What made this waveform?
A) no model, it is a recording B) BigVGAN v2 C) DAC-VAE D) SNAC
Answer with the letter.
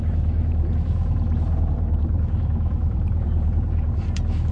B